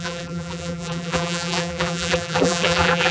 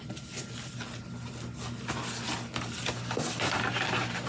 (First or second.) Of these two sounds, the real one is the second